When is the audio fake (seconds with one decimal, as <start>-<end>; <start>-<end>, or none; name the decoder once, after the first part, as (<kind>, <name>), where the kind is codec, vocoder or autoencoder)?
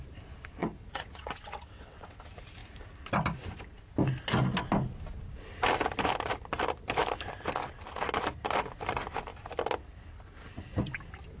0.6-2.2 (vocoder, WaveNeXt)